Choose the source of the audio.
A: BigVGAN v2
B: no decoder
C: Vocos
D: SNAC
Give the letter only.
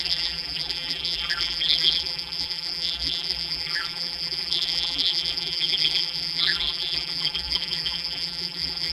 A